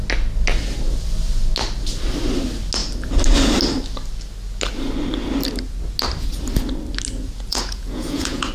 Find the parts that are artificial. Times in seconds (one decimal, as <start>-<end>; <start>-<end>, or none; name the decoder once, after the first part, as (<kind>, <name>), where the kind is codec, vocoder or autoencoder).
7.5-8.5 (vocoder, Vocos)